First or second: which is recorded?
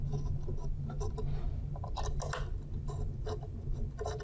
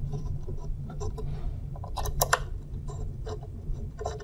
first